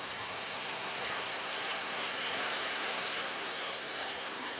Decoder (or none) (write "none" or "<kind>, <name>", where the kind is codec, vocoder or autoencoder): codec, SNAC